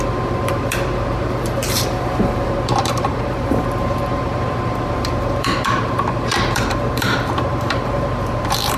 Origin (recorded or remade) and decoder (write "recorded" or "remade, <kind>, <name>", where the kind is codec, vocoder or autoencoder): remade, vocoder, BigVGAN v2